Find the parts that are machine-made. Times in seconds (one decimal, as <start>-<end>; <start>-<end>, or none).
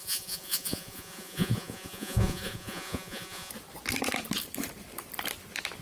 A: 0.0-3.5